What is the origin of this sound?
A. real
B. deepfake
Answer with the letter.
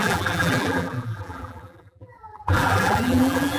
B